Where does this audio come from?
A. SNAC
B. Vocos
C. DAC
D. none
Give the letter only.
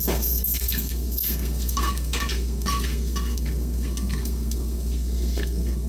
A